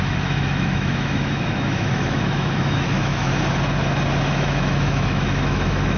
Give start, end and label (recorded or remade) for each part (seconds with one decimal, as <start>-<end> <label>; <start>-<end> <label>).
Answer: 0.0-3.3 remade; 3.3-4.3 recorded; 4.3-6.0 remade